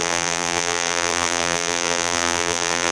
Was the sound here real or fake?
fake